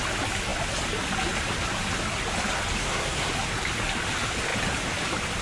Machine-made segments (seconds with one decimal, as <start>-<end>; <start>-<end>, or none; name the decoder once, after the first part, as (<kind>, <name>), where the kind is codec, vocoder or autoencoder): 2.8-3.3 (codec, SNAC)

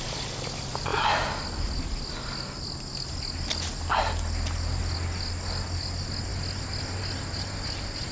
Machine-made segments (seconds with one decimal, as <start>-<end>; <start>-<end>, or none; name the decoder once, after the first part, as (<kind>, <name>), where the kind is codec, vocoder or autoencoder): none

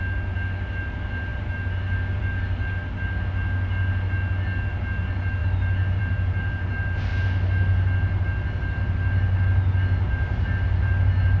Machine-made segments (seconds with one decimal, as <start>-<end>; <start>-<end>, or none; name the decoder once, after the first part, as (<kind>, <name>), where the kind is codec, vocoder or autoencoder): none

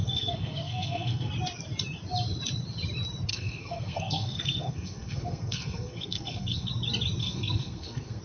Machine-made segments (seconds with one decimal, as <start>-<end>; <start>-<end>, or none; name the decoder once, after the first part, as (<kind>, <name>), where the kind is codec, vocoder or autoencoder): 0.0-1.3 (codec, SNAC); 3.3-6.7; 7.2-8.2

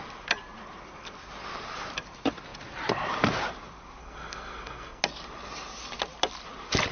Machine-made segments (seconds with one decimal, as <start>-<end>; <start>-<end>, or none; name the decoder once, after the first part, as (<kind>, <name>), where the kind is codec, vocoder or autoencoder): 4.0-5.0 (codec, SNAC)

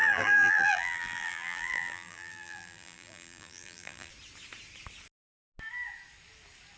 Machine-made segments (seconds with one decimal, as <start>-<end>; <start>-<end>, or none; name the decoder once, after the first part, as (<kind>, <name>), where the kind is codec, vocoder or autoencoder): 0.0-4.1 (vocoder, BigVGAN v2)